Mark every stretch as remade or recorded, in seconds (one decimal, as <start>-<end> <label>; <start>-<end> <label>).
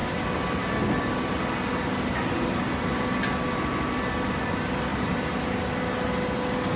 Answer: 0.0-6.8 recorded